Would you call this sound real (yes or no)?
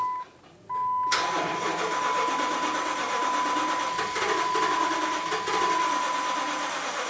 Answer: yes